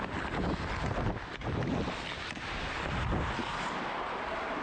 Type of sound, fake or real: real